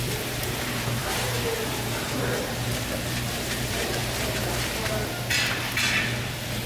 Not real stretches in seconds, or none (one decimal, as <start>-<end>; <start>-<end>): 1.0-5.0